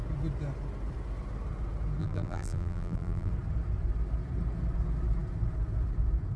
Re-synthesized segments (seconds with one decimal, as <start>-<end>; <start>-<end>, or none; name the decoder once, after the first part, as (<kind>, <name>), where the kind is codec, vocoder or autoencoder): 2.0-3.3 (vocoder, BigVGAN v2)